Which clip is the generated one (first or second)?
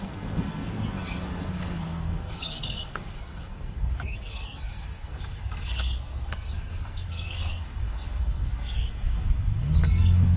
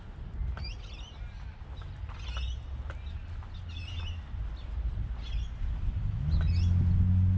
first